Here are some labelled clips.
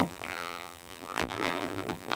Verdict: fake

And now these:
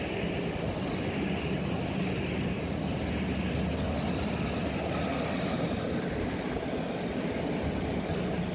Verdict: real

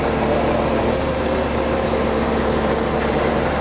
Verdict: fake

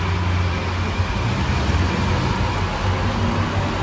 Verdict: real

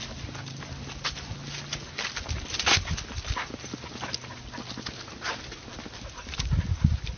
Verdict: real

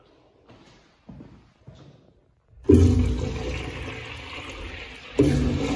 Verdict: real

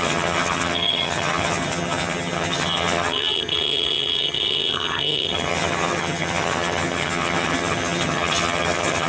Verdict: fake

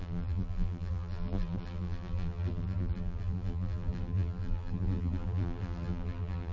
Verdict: fake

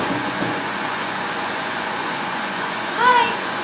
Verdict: fake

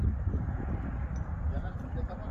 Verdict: real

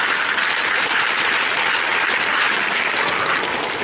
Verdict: real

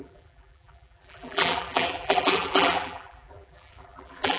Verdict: fake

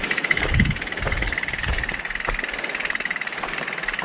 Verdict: real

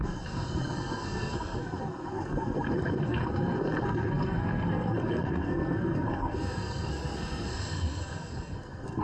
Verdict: fake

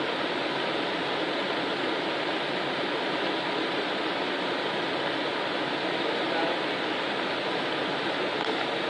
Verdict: real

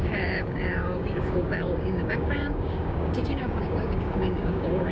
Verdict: fake